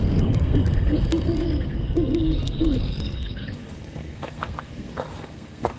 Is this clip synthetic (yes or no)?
yes